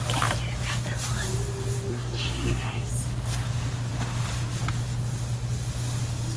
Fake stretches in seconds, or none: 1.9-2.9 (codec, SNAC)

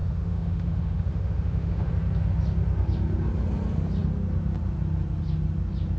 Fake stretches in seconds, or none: 0.0-1.9 (autoencoder, DAC-VAE)

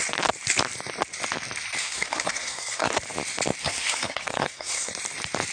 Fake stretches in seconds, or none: 1.8-2.9 (codec, SNAC); 3.6-4.9

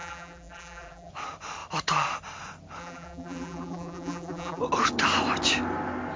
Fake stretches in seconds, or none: 0.0-1.1 (vocoder, BigVGAN v2); 2.8-4.6

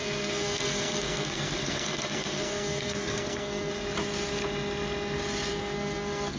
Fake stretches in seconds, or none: 0.0-3.7 (codec, SNAC); 5.5-6.4

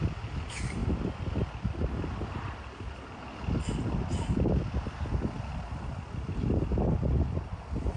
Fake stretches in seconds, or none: none

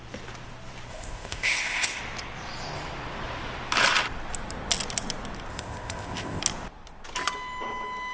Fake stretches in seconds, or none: 0.9-2.0 (codec, ZipCodec); 5.5-6.4

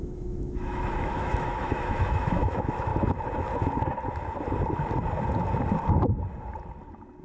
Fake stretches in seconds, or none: 0.0-2.9 (autoencoder, DAC-VAE)